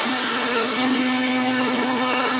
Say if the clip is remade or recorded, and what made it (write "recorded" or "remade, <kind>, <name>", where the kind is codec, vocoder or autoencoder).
remade, codec, SNAC